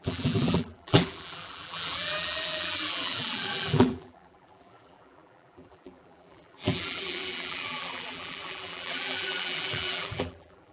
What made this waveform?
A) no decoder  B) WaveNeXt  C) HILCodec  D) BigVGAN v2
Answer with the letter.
D